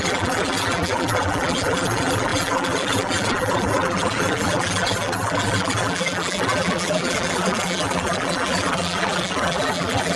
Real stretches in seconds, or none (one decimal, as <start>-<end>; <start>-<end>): none